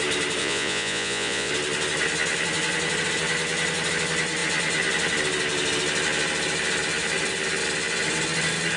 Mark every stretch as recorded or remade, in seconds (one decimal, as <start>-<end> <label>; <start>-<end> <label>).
0.0-0.4 recorded; 0.4-1.5 remade; 1.5-8.8 recorded